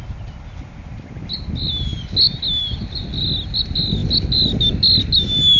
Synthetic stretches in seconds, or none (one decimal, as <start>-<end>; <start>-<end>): none